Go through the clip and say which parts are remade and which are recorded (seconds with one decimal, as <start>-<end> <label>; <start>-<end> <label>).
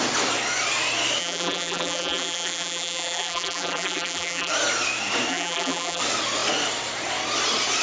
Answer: 0.0-1.2 recorded; 1.2-4.5 remade; 4.5-5.3 recorded; 5.3-6.0 remade; 6.0-7.8 recorded